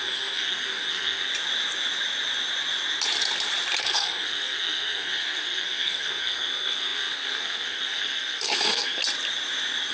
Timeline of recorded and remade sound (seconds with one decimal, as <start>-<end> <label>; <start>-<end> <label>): 0.0-1.3 remade; 1.3-3.8 recorded; 3.8-9.0 remade; 9.0-9.9 recorded

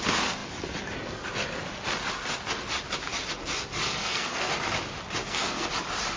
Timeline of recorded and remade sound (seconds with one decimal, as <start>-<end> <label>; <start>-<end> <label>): 0.0-4.0 recorded; 4.0-4.5 remade; 4.5-5.2 recorded; 5.2-5.7 remade; 5.7-6.2 recorded

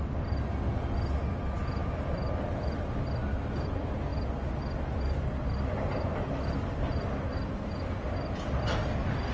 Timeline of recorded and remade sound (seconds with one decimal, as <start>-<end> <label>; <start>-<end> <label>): 0.0-9.3 recorded

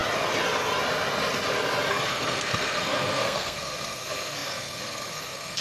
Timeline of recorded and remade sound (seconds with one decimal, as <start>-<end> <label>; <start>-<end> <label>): 0.0-1.9 recorded; 1.9-5.6 remade

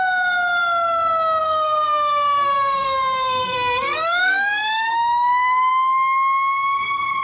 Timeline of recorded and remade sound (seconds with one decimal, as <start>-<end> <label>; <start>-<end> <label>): 0.0-1.4 recorded; 1.4-5.7 remade; 5.7-7.2 recorded

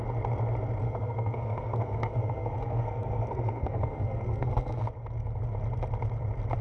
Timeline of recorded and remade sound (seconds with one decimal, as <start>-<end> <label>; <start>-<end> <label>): 0.0-0.8 recorded; 0.8-4.8 remade; 4.8-6.6 recorded

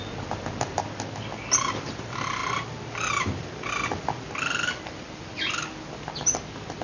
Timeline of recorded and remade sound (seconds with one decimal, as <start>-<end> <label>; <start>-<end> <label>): 0.0-6.8 recorded